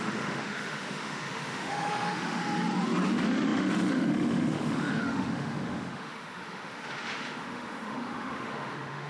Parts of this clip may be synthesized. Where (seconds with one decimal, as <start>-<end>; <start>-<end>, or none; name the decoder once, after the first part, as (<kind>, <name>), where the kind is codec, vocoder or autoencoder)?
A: 0.0-2.4 (autoencoder, DAC-VAE); 3.1-9.1